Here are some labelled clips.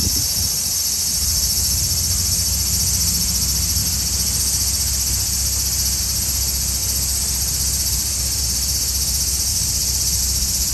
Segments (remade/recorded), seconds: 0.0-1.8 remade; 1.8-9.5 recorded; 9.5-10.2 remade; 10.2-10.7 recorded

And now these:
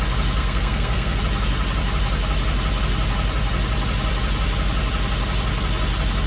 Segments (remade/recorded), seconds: 0.0-0.4 recorded; 0.4-1.2 remade; 1.2-6.3 recorded

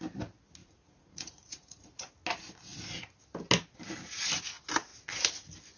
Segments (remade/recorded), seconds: 0.0-0.6 recorded; 0.6-2.1 remade; 2.1-5.8 recorded

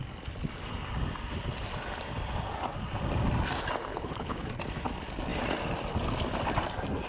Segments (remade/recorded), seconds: 0.0-3.9 recorded; 3.9-4.5 remade; 4.5-7.1 recorded

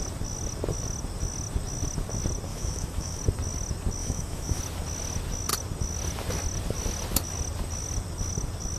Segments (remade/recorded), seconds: 0.0-2.5 recorded; 2.5-3.2 remade; 3.2-4.0 recorded; 4.0-4.6 remade; 4.6-8.8 recorded